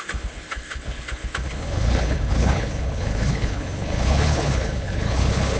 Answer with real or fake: fake